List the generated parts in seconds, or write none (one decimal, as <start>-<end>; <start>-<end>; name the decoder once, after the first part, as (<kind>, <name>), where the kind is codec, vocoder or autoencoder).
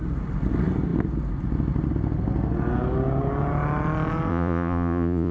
4.3-5.3 (vocoder, Vocos)